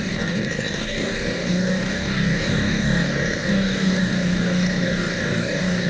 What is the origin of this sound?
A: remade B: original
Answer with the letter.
A